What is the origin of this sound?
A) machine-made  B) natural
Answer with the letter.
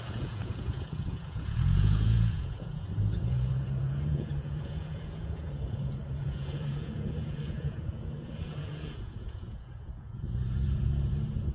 A